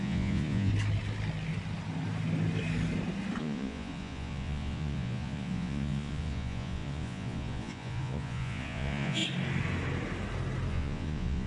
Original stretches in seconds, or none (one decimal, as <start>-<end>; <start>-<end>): 0.7-3.4; 9.2-10.7